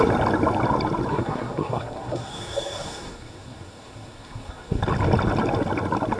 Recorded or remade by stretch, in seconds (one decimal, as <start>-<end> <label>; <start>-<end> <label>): 0.0-1.1 recorded; 1.1-4.8 remade; 4.8-6.2 recorded